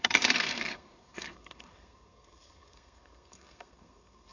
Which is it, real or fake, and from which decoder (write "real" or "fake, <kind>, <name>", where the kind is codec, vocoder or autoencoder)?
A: fake, codec, SNAC